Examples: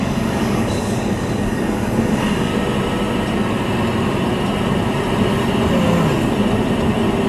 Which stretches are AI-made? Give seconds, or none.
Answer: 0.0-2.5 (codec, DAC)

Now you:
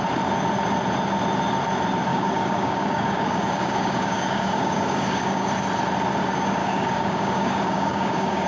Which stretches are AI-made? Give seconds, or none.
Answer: 2.1-5.5 (codec, DAC); 6.6-8.5